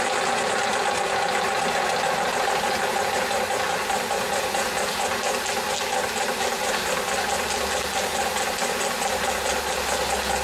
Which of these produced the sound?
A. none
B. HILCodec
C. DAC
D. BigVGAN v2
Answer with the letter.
A